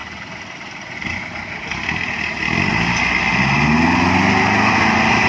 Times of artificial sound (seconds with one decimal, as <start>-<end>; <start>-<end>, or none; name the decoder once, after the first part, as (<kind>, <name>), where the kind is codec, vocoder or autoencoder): none